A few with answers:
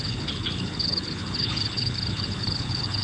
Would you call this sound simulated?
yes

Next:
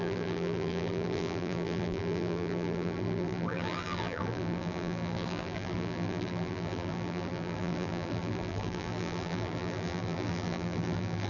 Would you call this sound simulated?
yes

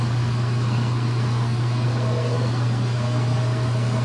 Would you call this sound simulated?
yes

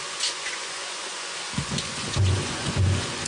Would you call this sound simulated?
yes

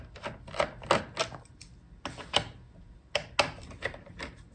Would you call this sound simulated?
no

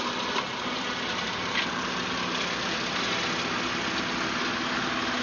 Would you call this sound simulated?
no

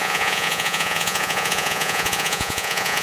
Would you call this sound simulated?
yes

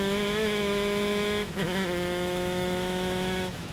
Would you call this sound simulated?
yes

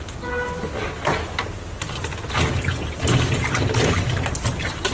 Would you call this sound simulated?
no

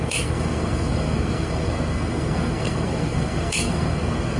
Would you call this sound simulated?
yes